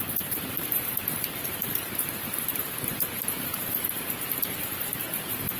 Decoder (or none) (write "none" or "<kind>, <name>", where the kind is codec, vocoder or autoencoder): vocoder, BigVGAN v2